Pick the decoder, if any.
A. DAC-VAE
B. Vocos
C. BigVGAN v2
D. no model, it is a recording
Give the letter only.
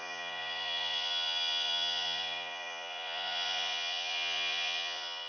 B